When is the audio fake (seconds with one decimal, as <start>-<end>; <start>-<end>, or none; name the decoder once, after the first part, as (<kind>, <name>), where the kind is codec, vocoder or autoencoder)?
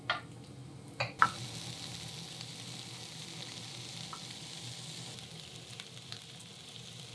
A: none